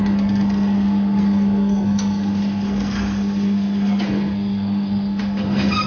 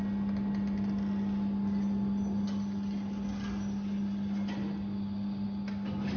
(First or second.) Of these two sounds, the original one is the second